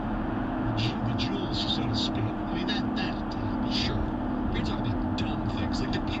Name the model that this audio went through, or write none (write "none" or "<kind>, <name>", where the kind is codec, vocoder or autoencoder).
none